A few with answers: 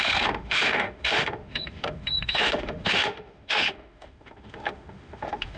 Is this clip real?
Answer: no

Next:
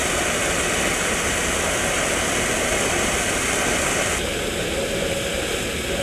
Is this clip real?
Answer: yes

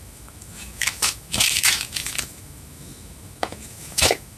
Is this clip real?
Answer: no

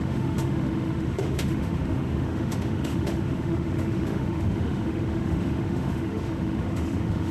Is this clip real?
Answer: no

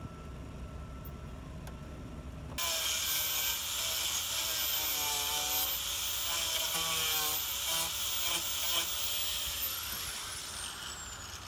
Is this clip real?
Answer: yes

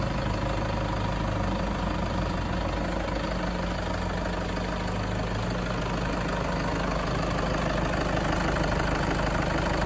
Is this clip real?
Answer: yes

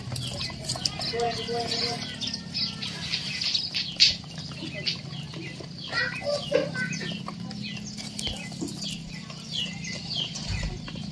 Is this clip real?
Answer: yes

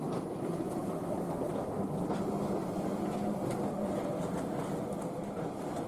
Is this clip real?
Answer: yes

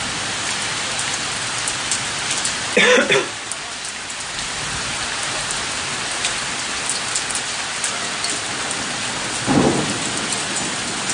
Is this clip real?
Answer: yes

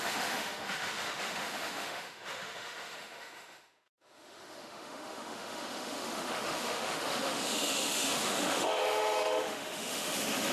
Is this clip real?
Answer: no